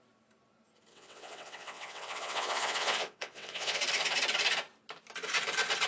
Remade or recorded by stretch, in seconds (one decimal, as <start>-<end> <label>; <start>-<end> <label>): 0.0-0.9 recorded; 0.9-3.8 remade; 3.8-5.9 recorded